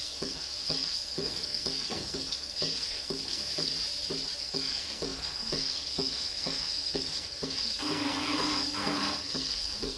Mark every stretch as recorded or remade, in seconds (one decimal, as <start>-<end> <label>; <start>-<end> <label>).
0.0-3.7 remade; 3.7-4.4 recorded; 4.4-10.0 remade